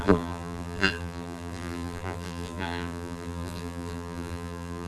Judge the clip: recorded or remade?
remade